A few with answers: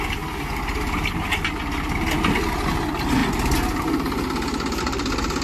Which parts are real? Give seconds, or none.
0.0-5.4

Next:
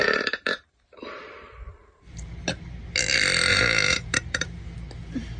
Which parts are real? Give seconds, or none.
2.8-3.5; 4.6-5.4

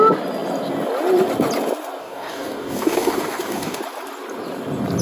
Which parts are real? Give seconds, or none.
0.0-2.0; 3.8-5.0